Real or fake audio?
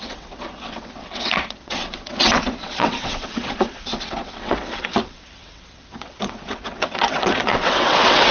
fake